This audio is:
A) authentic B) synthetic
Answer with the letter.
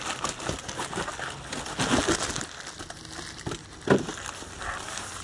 A